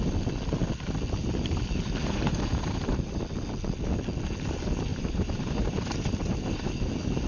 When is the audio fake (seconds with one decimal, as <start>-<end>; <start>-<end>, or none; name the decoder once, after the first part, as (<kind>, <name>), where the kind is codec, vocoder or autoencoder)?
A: 2.0-3.2 (vocoder, BigVGAN v2); 4.9-6.7